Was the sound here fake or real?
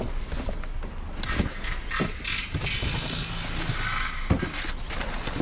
real